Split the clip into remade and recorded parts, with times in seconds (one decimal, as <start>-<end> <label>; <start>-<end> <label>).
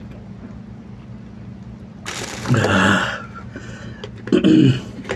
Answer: 0.0-5.2 recorded